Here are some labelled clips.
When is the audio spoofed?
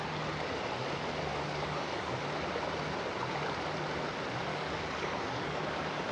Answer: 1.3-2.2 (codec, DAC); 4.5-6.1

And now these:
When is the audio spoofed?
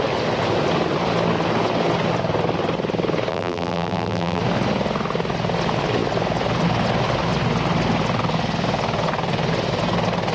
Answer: 3.3-4.4 (vocoder, BigVGAN v2)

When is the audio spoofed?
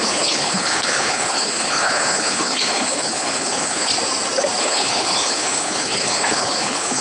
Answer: 0.0-3.9 (codec, HILCodec); 4.6-7.0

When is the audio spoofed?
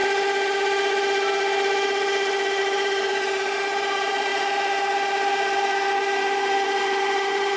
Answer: 2.6-4.3 (vocoder, BigVGAN v2); 6.8-7.6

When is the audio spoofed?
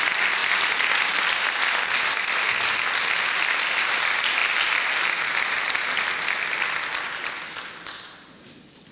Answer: none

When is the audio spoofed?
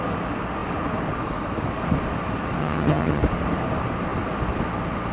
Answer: 2.6-3.2 (vocoder, HiFi-GAN)